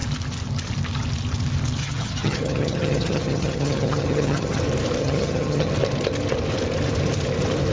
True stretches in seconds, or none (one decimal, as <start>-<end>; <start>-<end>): 0.0-1.8; 4.6-5.0; 5.7-7.7